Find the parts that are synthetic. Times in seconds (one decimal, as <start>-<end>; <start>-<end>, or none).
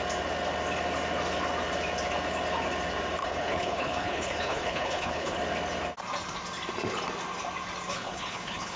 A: 3.2-5.4; 7.9-8.8